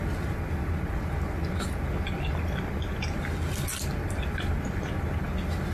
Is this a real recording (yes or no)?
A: yes